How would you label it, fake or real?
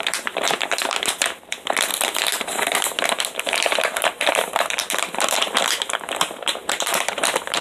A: fake